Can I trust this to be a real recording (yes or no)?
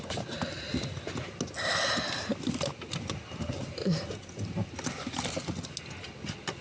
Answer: yes